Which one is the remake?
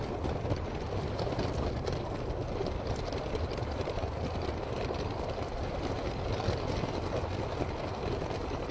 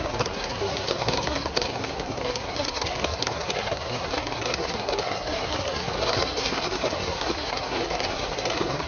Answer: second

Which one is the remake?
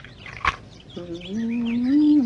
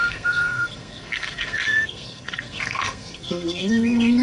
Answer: second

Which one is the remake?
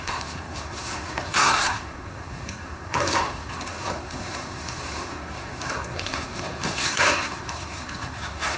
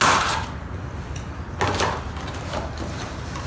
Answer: first